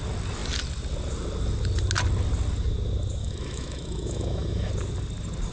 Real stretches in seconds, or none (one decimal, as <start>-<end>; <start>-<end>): 0.0-3.2; 4.7-5.5